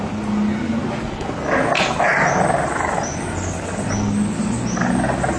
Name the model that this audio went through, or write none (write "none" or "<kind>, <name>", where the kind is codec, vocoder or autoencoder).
none